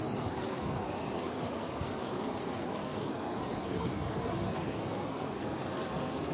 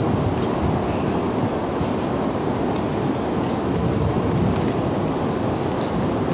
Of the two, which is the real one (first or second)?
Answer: second